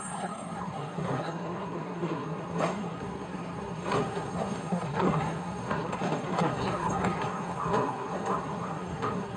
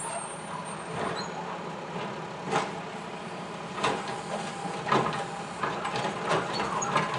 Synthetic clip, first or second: first